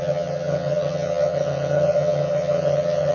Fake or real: fake